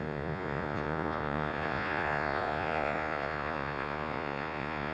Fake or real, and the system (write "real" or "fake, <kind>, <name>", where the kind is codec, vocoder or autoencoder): fake, vocoder, Vocos